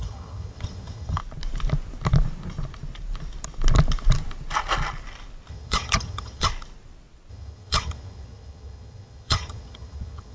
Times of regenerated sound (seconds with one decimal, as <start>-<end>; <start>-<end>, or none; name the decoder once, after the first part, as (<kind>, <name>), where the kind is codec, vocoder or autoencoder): 0.0-1.2 (vocoder, HiFi-GAN); 5.5-6.5; 7.3-10.3